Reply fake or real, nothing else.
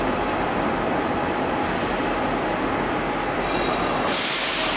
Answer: real